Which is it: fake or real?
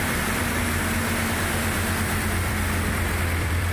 fake